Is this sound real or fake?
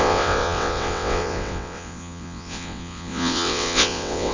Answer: fake